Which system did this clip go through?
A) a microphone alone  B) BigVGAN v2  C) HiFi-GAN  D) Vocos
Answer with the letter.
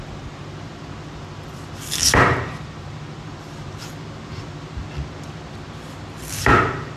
B